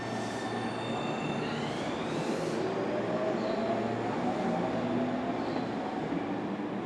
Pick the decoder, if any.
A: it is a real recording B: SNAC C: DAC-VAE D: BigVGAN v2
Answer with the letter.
A